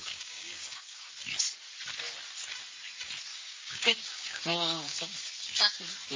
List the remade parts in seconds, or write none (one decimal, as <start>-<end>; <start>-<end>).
0.0-1.1; 3.3-5.3